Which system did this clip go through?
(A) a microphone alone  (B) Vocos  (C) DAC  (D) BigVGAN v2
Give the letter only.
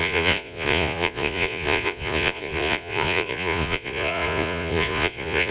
B